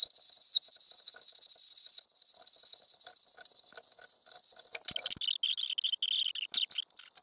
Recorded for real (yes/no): yes